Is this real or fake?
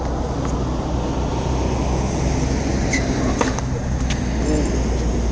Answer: real